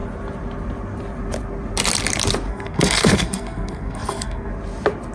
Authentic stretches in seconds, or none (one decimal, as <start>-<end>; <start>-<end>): 0.0-2.5; 4.5-5.1